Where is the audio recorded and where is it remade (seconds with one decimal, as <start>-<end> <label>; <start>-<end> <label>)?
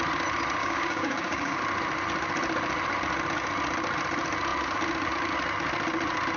0.0-0.6 recorded; 0.6-1.6 remade; 1.6-6.4 recorded